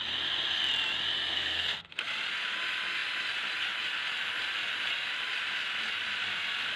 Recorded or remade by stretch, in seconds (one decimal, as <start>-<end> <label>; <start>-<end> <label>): 0.0-1.3 recorded; 1.3-1.9 remade; 1.9-6.8 recorded